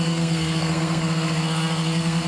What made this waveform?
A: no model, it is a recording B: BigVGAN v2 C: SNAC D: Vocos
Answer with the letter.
C